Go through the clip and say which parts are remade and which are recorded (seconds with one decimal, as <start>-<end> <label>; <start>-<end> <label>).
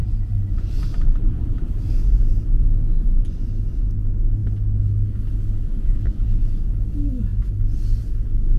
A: 0.0-2.0 remade; 2.0-8.6 recorded